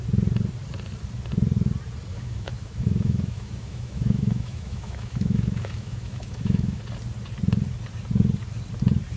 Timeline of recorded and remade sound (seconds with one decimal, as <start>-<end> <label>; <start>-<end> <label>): 0.0-2.1 recorded; 2.1-6.8 remade; 6.8-9.2 recorded